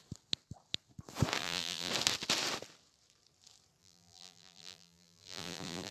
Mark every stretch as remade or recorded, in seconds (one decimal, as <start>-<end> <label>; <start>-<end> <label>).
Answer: 0.0-1.4 recorded; 1.4-1.9 remade; 1.9-3.8 recorded; 3.8-5.9 remade

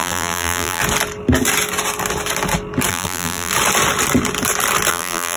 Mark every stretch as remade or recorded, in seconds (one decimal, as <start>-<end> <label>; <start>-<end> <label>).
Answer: 0.0-0.8 remade; 0.8-2.9 recorded; 2.9-3.5 remade; 3.5-4.9 recorded; 4.9-5.4 remade

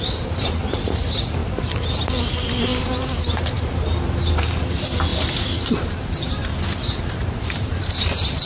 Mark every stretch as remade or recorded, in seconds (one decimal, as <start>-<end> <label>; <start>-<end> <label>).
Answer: 0.0-1.4 remade; 1.4-2.2 recorded; 2.2-6.4 remade; 6.4-7.0 recorded; 7.0-8.5 remade

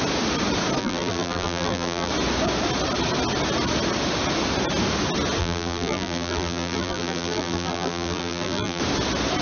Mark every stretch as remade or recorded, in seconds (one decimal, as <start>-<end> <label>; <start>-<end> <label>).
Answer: 0.0-0.8 recorded; 0.8-2.1 remade; 2.1-5.4 recorded; 5.4-8.8 remade; 8.8-9.4 recorded